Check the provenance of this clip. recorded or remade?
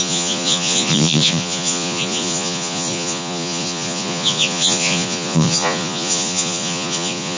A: remade